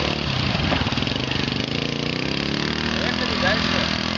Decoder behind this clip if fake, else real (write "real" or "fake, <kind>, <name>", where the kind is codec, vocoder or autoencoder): real